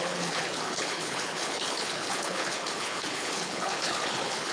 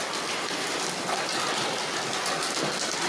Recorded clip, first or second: second